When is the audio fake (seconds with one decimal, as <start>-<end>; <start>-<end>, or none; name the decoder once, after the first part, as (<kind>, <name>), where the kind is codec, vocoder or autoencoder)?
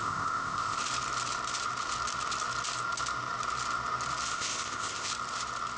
0.0-0.8 (codec, ZipCodec); 4.3-5.1